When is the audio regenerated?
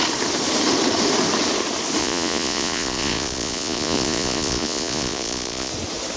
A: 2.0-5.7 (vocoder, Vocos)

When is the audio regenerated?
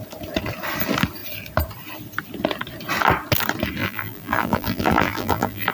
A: 3.8-5.7 (vocoder, BigVGAN v2)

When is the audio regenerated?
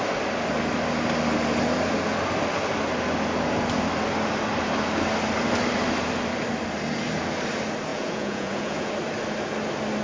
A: 7.9-8.9 (vocoder, Vocos)